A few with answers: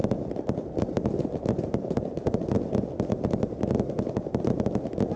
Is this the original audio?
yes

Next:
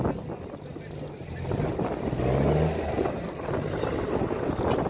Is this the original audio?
yes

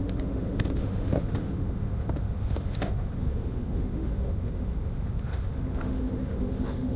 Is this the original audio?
no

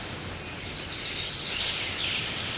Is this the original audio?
yes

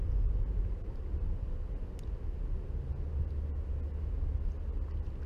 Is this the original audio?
yes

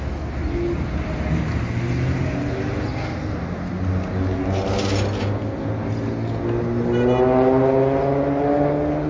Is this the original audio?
yes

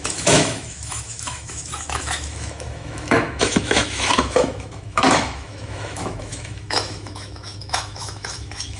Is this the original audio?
no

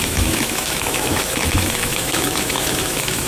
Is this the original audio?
no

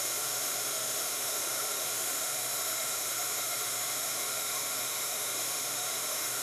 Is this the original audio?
no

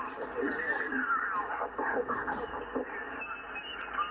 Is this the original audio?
yes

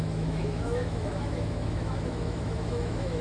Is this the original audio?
no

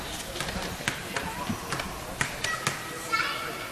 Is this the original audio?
yes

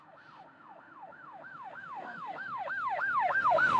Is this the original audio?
no